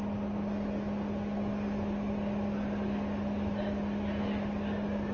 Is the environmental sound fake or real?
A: real